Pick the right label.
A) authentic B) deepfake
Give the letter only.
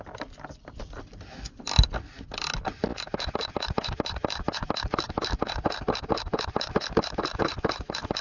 A